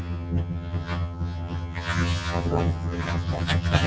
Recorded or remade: remade